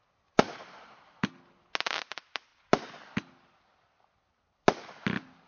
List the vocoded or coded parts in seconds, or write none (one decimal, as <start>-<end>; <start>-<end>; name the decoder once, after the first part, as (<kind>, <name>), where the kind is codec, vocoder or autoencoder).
none